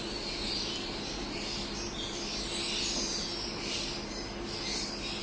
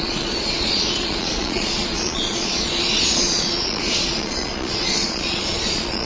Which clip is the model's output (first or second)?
second